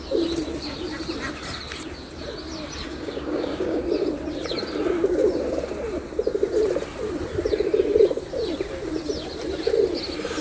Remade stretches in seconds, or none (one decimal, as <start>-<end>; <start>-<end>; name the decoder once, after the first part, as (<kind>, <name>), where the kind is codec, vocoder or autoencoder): 2.9-3.8 (codec, DAC)